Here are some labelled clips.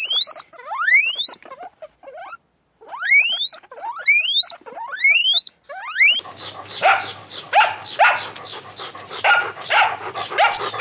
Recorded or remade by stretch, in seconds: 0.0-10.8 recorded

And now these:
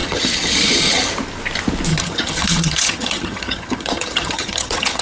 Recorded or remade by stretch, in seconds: 0.0-1.1 remade; 1.1-1.9 recorded; 1.9-5.0 remade

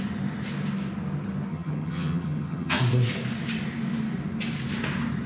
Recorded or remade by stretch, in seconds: 0.0-1.5 recorded; 1.5-2.8 remade; 2.8-5.3 recorded

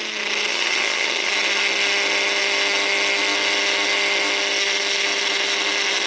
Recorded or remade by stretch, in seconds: 0.0-0.5 recorded; 0.5-1.3 remade; 1.3-6.1 recorded

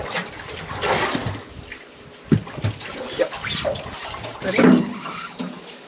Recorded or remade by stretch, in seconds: 0.0-5.9 recorded

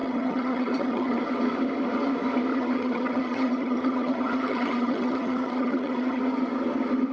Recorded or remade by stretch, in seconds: 0.0-1.2 remade; 1.2-2.5 recorded; 2.5-6.2 remade; 6.2-7.1 recorded

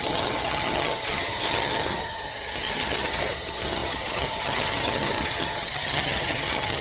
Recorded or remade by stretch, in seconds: 0.0-6.8 remade